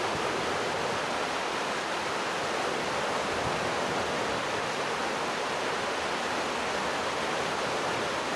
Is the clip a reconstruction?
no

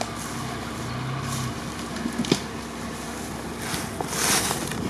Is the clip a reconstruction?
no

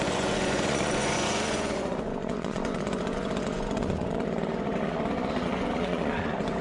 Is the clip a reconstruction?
yes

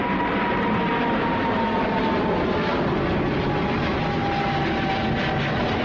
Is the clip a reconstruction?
no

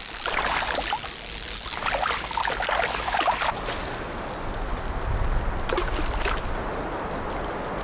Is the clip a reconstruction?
no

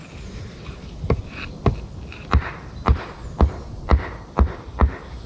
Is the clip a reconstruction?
no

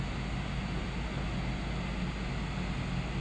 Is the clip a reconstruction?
no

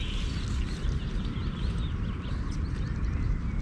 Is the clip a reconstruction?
no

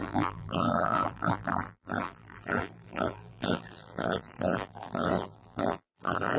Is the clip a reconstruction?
yes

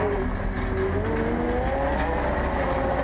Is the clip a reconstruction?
no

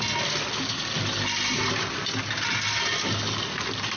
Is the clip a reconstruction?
no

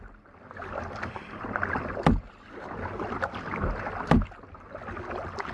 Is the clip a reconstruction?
no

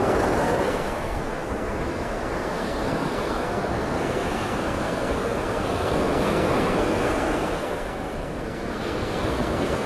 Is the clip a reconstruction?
yes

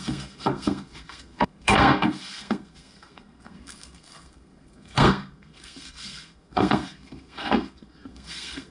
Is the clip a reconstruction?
yes